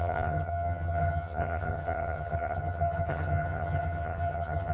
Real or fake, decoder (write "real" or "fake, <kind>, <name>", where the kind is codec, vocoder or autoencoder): fake, vocoder, HiFi-GAN